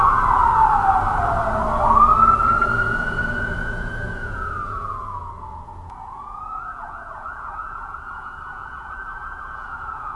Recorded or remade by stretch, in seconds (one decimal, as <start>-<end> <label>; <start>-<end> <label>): 0.0-0.4 remade; 0.4-2.4 recorded; 2.4-10.2 remade